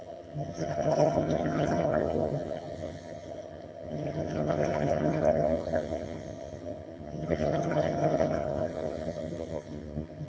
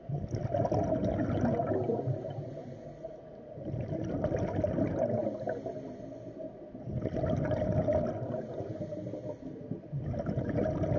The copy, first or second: first